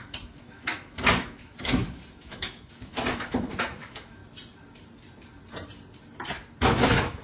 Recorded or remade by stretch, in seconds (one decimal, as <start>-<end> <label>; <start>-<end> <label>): 0.0-4.2 remade; 4.2-6.6 recorded; 6.6-7.2 remade